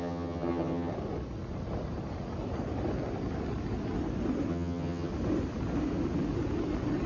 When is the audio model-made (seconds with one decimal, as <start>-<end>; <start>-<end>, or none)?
0.0-0.9; 4.5-5.1